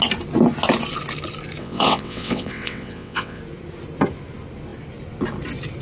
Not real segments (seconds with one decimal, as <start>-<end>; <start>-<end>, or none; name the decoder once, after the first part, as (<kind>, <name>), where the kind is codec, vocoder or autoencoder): 1.6-3.4 (vocoder, WaveNeXt)